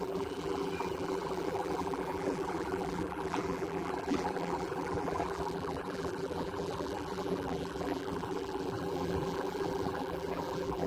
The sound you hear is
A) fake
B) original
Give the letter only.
A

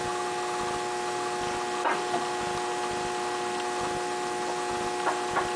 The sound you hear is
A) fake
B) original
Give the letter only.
B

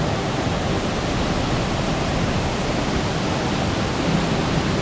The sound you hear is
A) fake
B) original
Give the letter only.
B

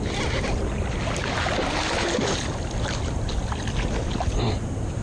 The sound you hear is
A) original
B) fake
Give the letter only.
A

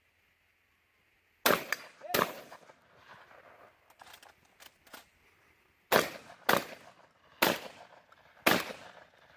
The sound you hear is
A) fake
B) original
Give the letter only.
B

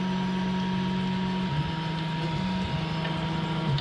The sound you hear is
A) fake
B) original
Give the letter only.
B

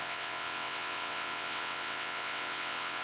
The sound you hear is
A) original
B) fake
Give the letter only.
B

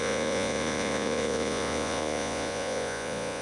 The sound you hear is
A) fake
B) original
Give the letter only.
A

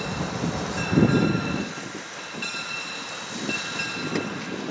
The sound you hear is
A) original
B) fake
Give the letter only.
A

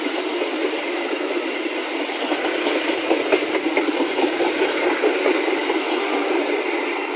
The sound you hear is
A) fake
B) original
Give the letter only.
B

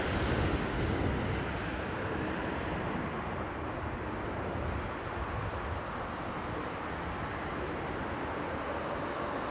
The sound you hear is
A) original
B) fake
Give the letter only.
A